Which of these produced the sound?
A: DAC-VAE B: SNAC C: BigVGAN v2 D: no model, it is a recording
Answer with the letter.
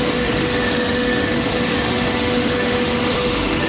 A